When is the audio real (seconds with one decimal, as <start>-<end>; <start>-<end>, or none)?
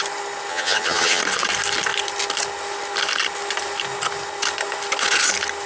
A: 0.0-0.5; 1.2-5.7